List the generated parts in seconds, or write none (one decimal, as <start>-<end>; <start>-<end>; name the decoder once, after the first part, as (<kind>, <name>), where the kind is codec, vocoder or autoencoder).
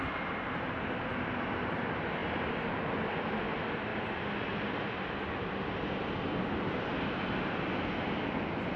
none